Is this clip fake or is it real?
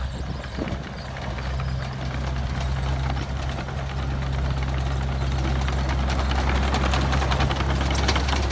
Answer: real